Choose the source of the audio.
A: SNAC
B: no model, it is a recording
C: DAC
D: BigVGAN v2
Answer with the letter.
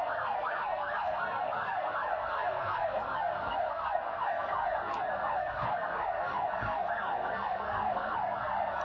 A